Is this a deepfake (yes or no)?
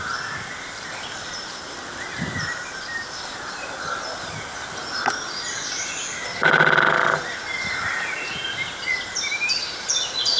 no